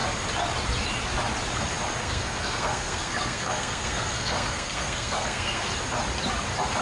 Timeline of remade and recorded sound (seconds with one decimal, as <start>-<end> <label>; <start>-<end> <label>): 0.0-2.0 recorded; 2.0-5.7 remade; 5.7-6.8 recorded